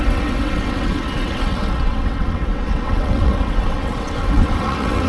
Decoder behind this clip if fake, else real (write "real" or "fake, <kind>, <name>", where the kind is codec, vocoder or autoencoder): fake, vocoder, WaveNeXt